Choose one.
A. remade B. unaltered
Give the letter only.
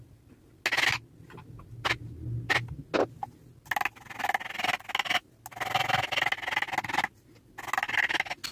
B